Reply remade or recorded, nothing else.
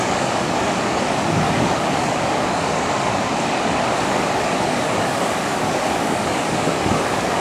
remade